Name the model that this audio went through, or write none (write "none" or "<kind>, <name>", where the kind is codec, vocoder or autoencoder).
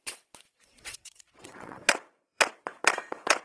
vocoder, WaveNeXt